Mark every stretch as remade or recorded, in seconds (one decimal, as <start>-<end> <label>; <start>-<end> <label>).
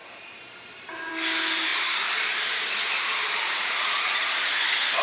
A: 0.0-1.1 remade; 1.1-1.7 recorded; 1.7-4.1 remade; 4.1-5.0 recorded